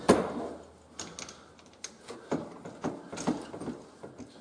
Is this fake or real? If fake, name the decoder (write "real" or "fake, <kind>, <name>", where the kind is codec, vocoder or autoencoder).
real